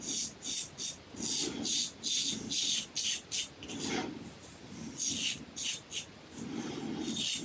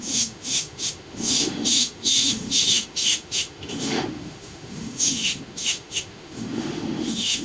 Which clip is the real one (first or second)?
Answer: first